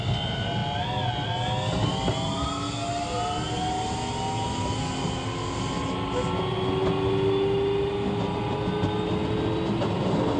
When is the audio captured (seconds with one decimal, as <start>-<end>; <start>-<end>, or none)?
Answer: 0.0-10.4